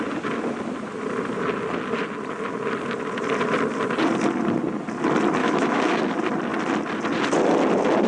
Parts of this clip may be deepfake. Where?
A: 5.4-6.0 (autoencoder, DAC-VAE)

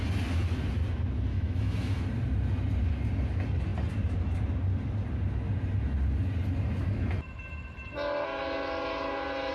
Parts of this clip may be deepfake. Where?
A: 1.3-2.0 (autoencoder, DAC-VAE)

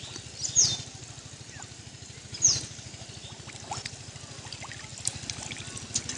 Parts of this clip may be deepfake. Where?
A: none

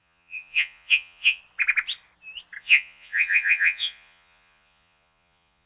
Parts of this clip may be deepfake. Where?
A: 0.0-1.4 (vocoder, Vocos); 2.6-5.7

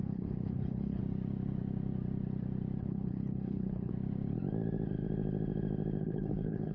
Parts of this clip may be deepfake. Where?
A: 0.0-1.0 (codec, HILCodec); 2.8-3.9; 6.0-6.7

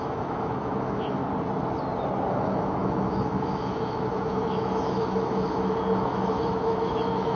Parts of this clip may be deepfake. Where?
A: 0.0-1.2 (autoencoder, DAC-VAE); 2.4-7.4